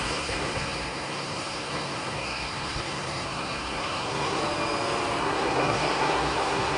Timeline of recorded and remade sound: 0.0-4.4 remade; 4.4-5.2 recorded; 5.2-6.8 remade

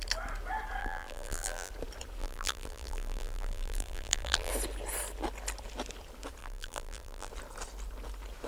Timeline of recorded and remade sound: 0.0-0.8 recorded; 0.8-1.7 remade; 1.7-2.2 recorded; 2.2-4.5 remade; 4.5-6.4 recorded; 6.4-7.3 remade; 7.3-8.5 recorded

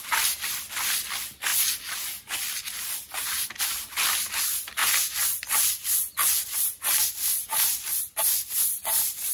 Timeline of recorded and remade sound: 0.0-9.3 recorded

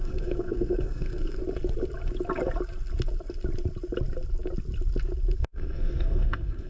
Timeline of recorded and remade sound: 0.0-1.4 remade; 1.4-5.4 recorded; 5.4-6.7 remade

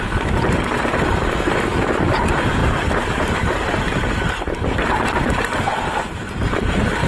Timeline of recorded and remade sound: 0.0-2.6 recorded; 2.6-5.3 remade; 5.3-7.1 recorded

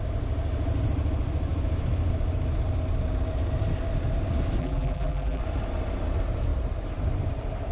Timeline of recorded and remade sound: 0.0-4.6 recorded; 4.6-5.4 remade; 5.4-7.7 recorded